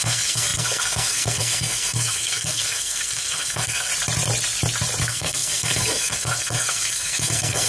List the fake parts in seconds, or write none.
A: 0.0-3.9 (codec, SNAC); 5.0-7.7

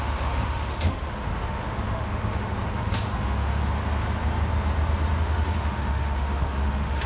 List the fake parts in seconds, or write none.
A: 0.0-3.6 (autoencoder, DAC-VAE); 5.2-7.1

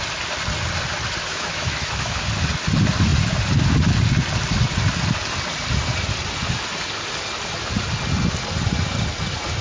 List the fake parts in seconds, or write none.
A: 1.3-2.2 (autoencoder, DAC-VAE)

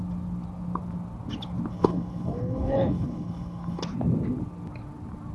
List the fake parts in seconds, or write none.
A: 1.7-3.8 (codec, HILCodec)

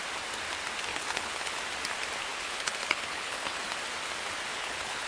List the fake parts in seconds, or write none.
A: 0.9-1.6 (codec, HILCodec); 2.3-3.6; 4.5-5.1

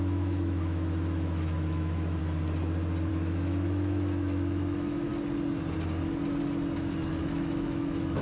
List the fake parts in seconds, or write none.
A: 0.0-2.2 (autoencoder, DAC-VAE); 3.1-5.1; 7.2-8.2